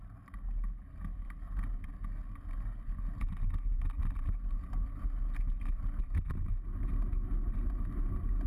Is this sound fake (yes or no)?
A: no